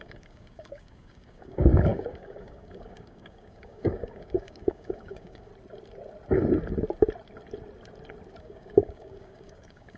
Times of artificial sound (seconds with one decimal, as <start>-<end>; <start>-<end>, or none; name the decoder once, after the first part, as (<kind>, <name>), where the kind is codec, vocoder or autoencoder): 0.0-5.5 (codec, DAC); 8.4-10.0